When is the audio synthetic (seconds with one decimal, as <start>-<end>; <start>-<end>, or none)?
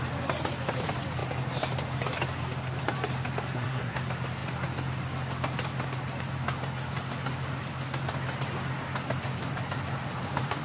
3.5-4.0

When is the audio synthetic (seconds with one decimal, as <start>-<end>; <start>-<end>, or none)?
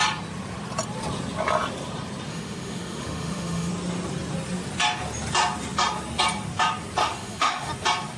2.3-3.7; 7.0-7.7